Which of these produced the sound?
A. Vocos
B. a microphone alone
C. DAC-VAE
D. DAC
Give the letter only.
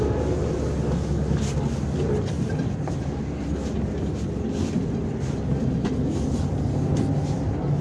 B